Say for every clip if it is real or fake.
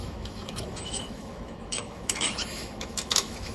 fake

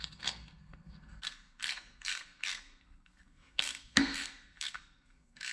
fake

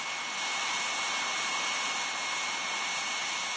real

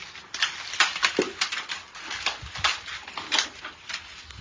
real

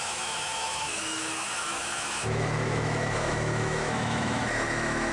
fake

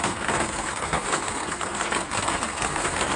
fake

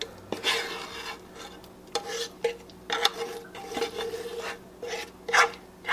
real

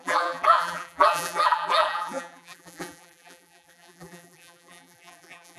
fake